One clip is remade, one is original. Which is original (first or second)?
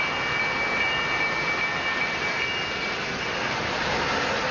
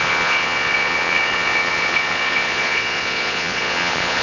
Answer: first